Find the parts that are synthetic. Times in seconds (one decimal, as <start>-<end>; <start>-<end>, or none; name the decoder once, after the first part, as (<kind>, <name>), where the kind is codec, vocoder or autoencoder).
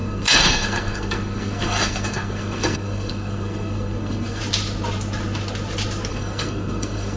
0.0-4.4 (codec, SNAC); 6.1-7.2